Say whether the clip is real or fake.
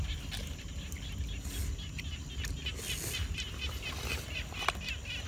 real